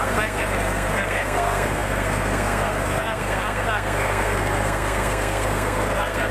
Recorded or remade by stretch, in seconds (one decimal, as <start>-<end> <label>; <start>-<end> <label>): 0.0-6.3 remade